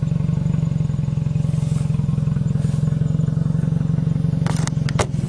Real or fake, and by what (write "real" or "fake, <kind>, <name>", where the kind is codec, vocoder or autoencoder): real